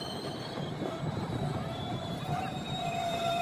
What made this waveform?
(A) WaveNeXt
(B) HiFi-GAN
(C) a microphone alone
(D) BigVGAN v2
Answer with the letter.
D